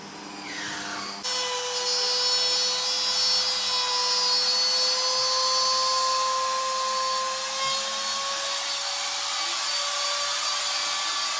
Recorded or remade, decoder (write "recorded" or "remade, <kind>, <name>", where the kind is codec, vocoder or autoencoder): recorded